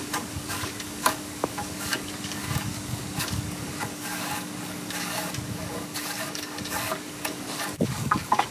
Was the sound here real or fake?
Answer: fake